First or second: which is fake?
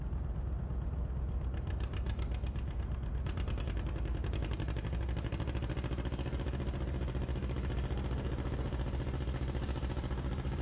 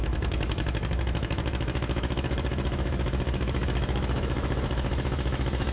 second